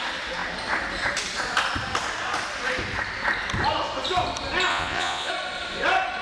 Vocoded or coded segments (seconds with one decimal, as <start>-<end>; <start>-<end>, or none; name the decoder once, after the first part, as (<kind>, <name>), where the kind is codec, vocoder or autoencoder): 4.7-5.3 (vocoder, Vocos)